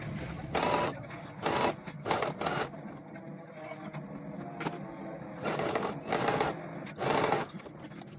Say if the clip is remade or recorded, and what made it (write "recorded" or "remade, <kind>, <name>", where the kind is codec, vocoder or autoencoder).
recorded